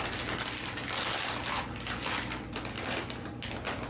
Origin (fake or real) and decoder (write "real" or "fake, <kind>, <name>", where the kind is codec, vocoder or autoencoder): real